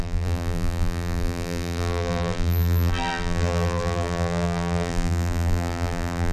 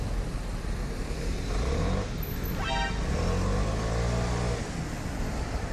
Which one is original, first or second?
second